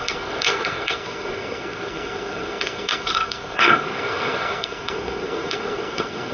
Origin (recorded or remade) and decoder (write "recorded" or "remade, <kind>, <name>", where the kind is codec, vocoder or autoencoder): remade, codec, SNAC